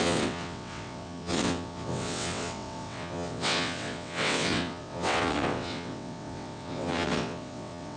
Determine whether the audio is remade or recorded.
remade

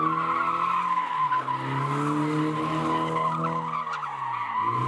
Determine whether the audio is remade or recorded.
recorded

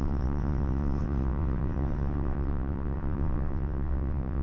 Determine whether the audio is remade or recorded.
remade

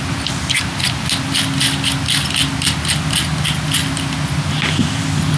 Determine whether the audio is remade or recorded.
recorded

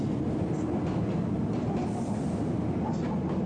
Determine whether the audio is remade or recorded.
recorded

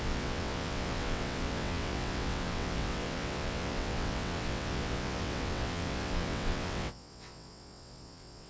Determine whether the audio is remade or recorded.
remade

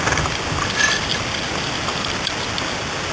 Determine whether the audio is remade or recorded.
recorded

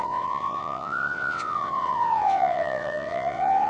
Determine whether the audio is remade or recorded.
remade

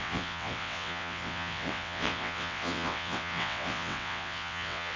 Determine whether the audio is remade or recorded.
remade